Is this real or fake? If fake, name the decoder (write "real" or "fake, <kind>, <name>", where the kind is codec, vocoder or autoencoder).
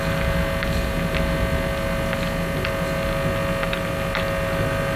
real